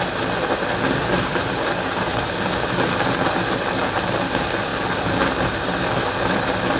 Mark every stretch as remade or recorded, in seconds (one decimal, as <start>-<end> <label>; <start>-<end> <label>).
0.0-6.8 recorded